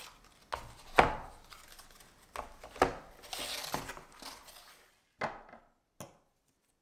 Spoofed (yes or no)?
no